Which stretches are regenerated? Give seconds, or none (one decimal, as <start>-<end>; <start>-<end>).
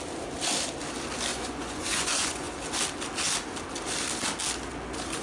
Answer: 1.3-2.5